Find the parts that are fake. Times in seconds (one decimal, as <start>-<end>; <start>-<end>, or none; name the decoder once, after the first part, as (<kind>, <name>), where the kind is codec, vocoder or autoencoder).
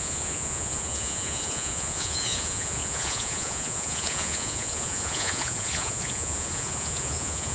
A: 0.0-7.5 (vocoder, Vocos)